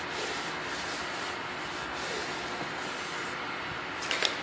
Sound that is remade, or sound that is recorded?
recorded